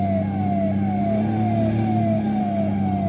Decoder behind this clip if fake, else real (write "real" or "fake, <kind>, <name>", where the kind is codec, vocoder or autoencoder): real